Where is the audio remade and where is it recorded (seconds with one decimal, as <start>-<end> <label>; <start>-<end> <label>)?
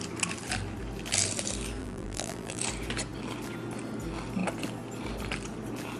0.0-1.8 recorded; 1.8-2.6 remade; 2.6-6.0 recorded